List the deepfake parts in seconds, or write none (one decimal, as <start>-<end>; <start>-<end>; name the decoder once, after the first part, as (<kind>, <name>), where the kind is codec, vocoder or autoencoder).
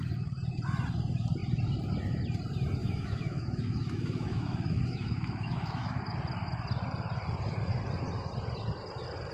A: 2.8-5.9 (autoencoder, DAC-VAE)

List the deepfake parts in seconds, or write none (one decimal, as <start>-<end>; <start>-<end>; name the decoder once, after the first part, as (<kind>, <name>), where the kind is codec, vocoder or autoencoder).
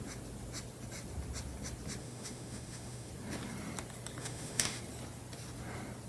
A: 2.0-3.1 (autoencoder, DAC-VAE); 4.2-4.8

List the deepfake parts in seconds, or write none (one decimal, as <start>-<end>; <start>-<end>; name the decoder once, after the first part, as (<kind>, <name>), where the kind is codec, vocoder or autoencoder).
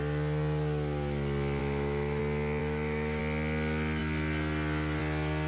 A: 1.6-2.2 (autoencoder, DAC-VAE); 2.6-3.2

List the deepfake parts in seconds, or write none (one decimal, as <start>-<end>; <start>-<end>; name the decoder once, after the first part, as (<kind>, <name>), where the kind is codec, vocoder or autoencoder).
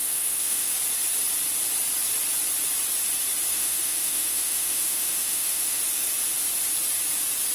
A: 0.0-0.7 (autoencoder, DAC-VAE); 3.5-5.8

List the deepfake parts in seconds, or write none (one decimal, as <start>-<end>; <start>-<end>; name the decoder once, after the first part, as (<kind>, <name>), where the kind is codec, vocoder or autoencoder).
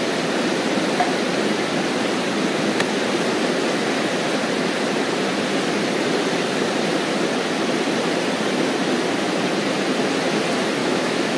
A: 10.8-11.4 (autoencoder, DAC-VAE)